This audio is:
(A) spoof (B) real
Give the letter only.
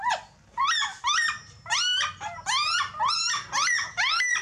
B